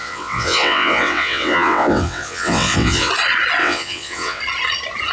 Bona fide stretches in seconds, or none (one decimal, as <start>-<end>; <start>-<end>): 3.1-3.6; 4.4-5.1